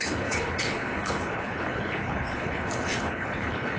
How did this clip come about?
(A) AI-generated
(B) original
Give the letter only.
A